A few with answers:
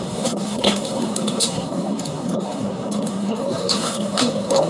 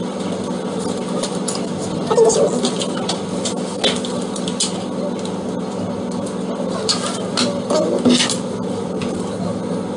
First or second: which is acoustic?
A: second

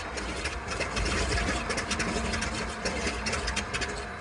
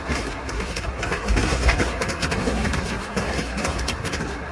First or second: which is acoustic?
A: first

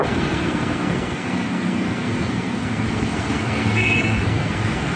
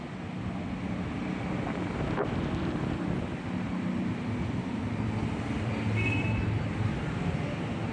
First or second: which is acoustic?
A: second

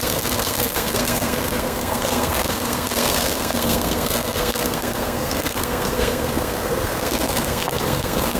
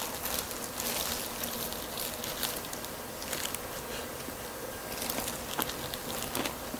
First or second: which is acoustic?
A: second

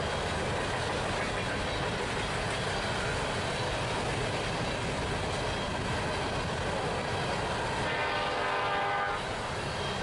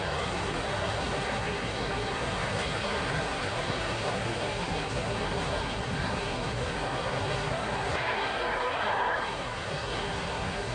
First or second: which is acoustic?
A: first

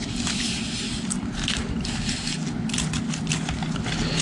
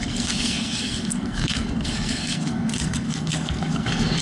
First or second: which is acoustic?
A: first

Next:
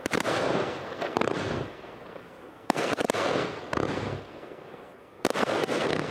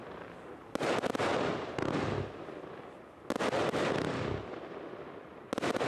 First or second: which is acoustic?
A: second